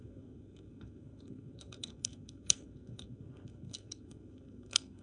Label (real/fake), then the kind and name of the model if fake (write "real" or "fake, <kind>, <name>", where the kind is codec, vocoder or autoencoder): fake, codec, SNAC